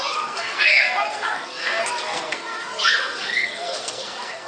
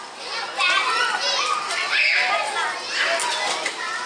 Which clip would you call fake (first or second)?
first